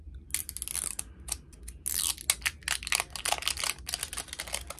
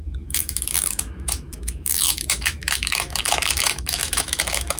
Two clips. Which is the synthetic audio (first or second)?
second